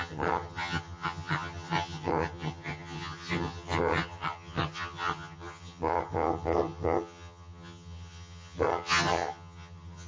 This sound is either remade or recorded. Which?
remade